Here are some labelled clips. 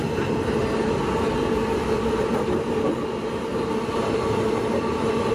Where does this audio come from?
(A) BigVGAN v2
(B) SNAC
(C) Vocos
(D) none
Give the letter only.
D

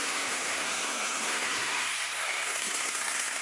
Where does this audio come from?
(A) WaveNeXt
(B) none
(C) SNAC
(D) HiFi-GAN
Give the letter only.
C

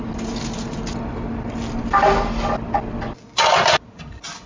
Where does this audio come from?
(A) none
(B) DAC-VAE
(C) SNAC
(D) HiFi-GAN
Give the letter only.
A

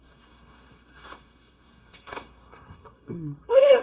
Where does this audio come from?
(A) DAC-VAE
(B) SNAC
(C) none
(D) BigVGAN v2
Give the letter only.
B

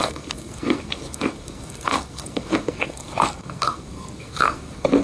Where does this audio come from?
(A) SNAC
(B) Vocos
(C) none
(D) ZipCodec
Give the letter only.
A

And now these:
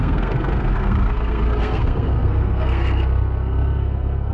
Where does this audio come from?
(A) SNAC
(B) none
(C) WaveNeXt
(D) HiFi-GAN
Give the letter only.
A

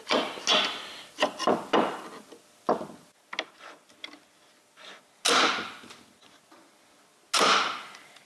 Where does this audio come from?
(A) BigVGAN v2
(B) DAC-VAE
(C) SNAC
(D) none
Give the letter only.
D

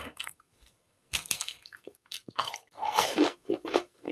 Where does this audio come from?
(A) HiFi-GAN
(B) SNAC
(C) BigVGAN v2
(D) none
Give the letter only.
B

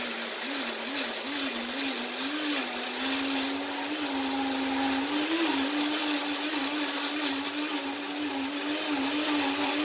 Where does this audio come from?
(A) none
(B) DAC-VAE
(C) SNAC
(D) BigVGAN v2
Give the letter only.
A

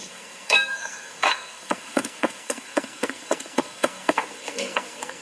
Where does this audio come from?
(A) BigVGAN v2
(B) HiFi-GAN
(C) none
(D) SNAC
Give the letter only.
D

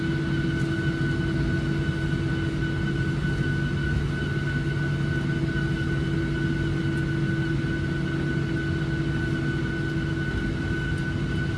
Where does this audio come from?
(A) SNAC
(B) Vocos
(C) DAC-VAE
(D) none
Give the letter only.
D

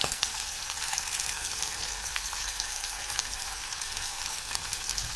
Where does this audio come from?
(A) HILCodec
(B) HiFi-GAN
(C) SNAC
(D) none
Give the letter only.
C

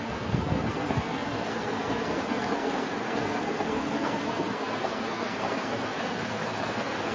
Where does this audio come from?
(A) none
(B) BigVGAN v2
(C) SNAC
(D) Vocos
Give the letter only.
C